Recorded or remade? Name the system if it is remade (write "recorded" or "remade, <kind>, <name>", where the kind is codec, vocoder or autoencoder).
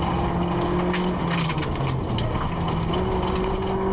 recorded